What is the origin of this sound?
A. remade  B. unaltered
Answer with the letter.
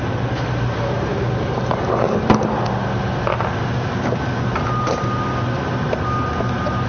B